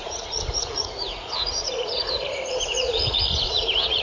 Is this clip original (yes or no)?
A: no